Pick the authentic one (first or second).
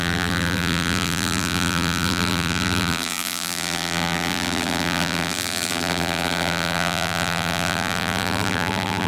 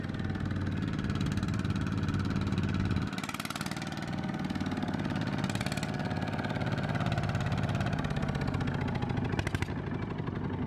second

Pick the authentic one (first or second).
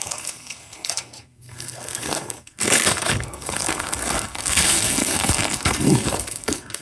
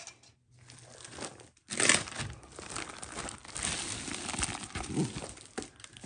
second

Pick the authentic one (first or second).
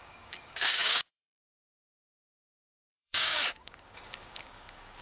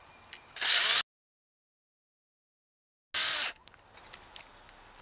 second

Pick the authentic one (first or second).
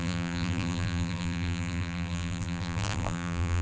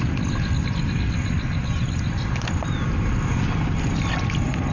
second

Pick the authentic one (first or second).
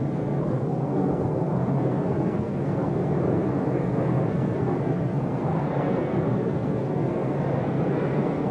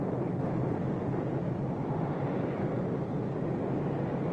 second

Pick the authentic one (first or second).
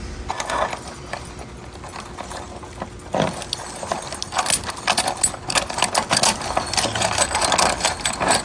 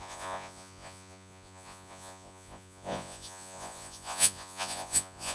first